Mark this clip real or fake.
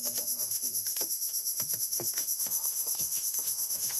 fake